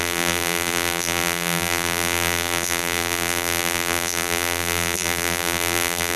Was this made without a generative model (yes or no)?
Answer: no